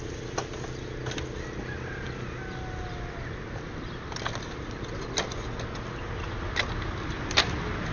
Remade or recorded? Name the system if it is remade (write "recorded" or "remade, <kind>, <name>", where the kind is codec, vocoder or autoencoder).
recorded